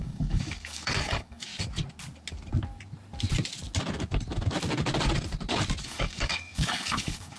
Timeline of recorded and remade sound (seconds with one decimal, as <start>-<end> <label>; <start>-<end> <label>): 0.0-1.5 remade; 1.5-5.8 recorded; 5.8-7.4 remade